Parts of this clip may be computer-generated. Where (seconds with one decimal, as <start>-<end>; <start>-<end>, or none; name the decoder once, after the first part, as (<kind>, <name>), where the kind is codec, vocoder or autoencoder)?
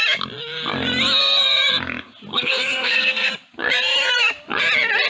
1.2-1.7 (codec, SNAC); 2.3-3.3